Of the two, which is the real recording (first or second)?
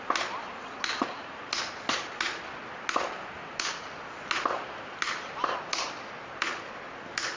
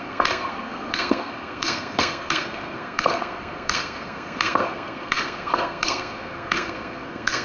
first